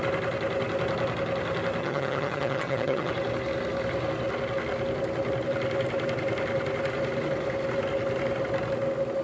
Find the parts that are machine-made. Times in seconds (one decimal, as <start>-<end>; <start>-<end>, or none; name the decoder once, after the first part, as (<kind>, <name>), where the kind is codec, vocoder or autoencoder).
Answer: 1.8-3.1 (vocoder, HiFi-GAN)